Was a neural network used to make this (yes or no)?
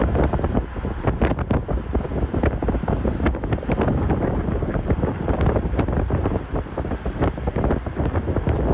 no